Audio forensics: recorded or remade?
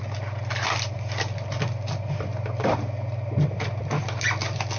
recorded